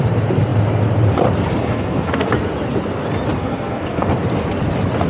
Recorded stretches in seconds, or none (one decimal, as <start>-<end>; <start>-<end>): 0.0-1.6; 2.3-3.4; 4.1-5.1